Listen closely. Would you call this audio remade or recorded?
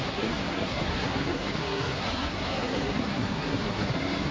remade